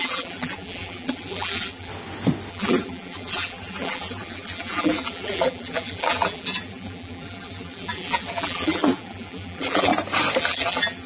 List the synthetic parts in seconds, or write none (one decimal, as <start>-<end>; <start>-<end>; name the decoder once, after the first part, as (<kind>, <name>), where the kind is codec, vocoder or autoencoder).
0.0-1.9 (vocoder, BigVGAN v2); 2.5-9.9; 10.4-11.1